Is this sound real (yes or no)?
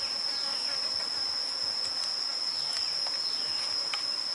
yes